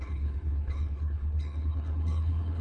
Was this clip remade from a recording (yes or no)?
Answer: yes